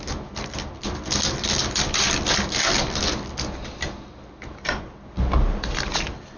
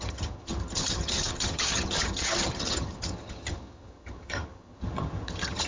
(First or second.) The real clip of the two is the first